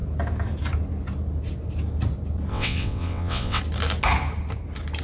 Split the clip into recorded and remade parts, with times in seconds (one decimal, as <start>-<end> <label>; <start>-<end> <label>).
0.0-2.5 recorded; 2.5-3.6 remade; 3.6-5.0 recorded